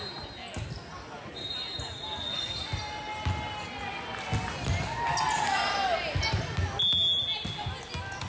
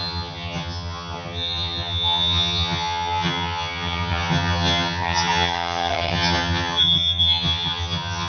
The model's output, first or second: second